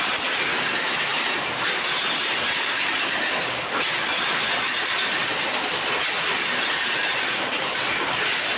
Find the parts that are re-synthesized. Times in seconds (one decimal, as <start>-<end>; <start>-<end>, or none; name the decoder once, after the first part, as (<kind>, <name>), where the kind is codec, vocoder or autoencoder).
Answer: 1.1-1.7 (vocoder, BigVGAN v2)